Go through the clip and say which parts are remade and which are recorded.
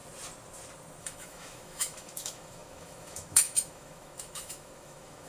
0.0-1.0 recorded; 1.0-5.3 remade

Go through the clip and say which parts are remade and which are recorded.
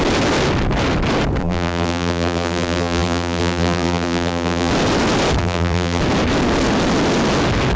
0.0-1.4 recorded; 1.4-4.7 remade; 4.7-5.4 recorded; 5.4-6.0 remade; 6.0-7.8 recorded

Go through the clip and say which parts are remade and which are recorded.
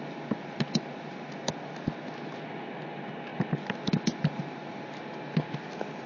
0.0-6.1 recorded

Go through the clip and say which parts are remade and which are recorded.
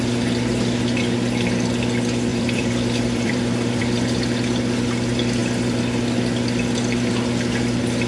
0.0-2.3 recorded; 2.3-3.8 remade; 3.8-8.1 recorded